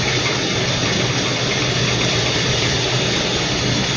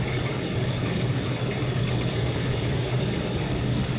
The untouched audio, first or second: first